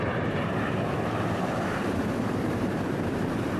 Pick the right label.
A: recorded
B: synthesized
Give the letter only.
B